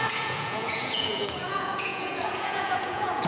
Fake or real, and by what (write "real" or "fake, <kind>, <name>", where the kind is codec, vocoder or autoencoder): fake, vocoder, Vocos